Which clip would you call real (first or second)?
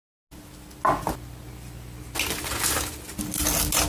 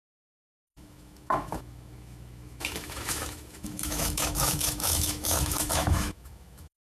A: first